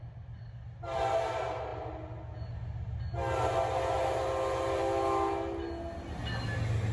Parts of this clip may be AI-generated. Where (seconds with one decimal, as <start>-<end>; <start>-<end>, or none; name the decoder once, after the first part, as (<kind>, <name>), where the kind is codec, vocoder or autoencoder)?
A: none